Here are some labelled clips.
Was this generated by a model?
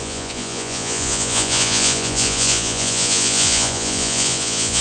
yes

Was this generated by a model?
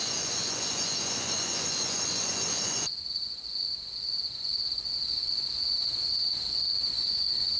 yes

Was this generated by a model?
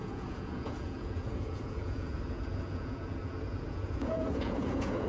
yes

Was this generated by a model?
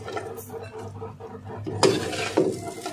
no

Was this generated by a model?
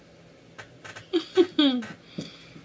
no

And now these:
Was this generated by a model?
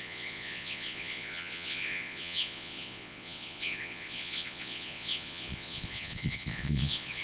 yes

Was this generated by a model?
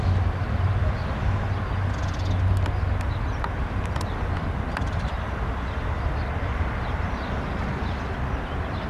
no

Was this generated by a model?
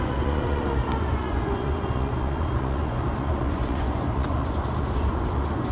yes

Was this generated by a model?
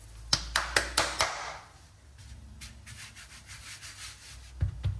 no